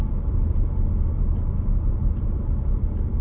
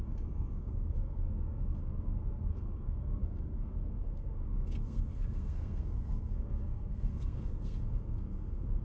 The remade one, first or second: second